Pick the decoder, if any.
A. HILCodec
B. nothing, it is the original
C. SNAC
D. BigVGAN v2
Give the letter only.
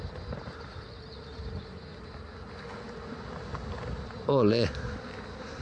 B